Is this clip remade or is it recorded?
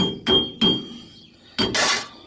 recorded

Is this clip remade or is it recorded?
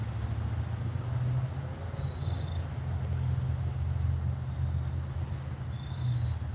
recorded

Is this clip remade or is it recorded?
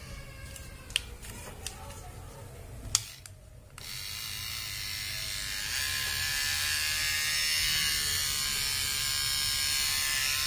recorded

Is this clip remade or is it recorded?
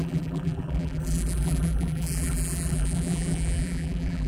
remade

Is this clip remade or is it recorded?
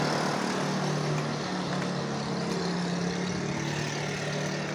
recorded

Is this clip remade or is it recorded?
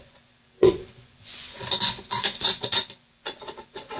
remade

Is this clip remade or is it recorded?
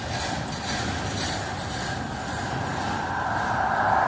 recorded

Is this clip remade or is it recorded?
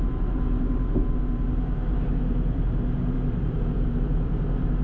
remade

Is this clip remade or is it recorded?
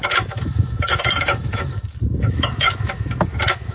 remade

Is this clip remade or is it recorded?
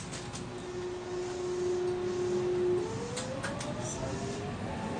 recorded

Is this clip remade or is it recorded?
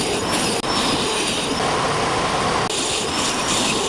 recorded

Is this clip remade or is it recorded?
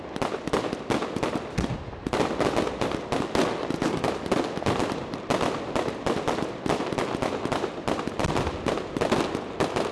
recorded